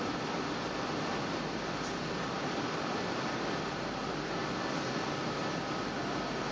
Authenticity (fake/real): real